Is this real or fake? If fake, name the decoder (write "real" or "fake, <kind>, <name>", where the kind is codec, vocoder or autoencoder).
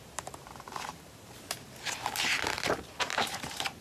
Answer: fake, vocoder, BigVGAN v2